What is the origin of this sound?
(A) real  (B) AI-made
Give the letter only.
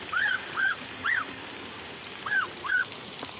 B